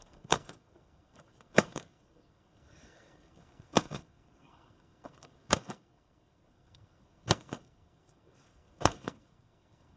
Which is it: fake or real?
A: fake